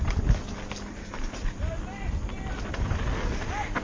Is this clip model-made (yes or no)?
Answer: no